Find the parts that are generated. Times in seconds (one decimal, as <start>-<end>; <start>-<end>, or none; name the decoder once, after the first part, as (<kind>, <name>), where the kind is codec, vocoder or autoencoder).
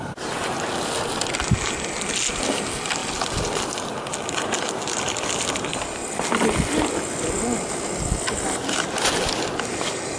none